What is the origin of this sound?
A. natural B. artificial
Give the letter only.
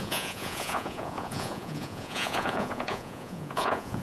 B